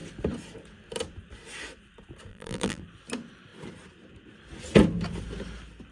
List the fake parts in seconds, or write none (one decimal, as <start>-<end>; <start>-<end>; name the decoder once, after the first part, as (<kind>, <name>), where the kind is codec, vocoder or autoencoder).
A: 2.3-2.8 (vocoder, BigVGAN v2)